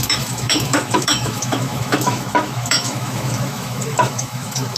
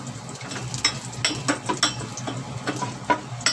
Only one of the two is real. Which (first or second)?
second